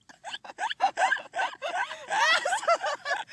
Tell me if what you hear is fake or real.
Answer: real